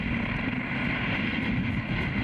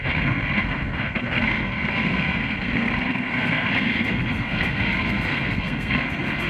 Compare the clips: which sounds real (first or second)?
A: first